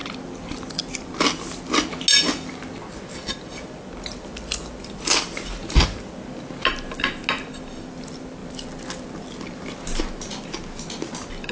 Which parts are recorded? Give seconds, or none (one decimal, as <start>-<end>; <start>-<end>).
0.0-11.5